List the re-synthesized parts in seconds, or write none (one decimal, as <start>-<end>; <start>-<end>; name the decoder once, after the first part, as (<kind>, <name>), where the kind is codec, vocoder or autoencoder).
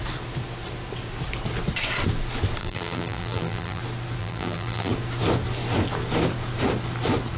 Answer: 2.6-3.8 (vocoder, BigVGAN v2); 4.2-4.9